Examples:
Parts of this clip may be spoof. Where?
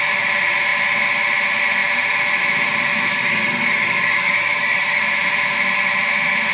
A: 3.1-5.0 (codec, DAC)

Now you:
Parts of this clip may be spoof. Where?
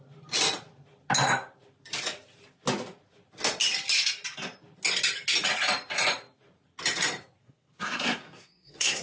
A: 7.4-9.0 (codec, SNAC)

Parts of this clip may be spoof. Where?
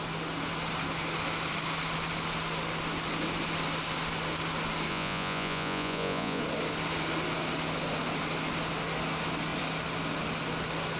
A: 4.9-6.4 (vocoder, Vocos)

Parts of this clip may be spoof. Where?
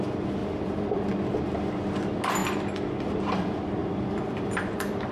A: 0.4-1.1 (vocoder, BigVGAN v2); 3.8-5.1